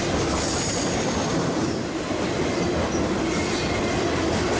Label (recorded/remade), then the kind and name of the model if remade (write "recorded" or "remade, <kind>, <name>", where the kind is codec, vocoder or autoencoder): recorded